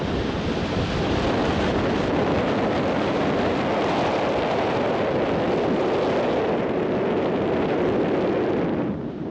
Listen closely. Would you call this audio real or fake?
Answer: real